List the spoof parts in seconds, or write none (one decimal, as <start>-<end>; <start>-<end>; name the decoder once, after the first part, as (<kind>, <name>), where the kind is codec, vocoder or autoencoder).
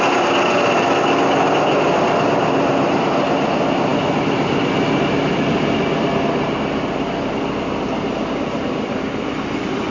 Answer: none